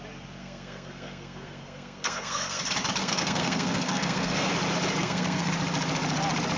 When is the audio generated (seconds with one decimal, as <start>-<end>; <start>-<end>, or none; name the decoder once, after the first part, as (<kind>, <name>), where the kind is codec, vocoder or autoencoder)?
0.4-2.6 (codec, SNAC); 3.0-4.5; 5.0-5.5